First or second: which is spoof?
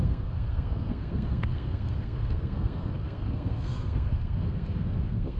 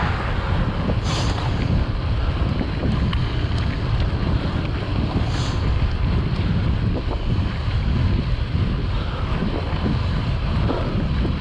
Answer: first